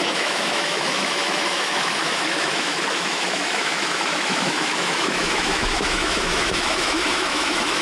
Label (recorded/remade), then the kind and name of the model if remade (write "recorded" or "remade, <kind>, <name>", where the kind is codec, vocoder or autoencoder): remade, autoencoder, DAC-VAE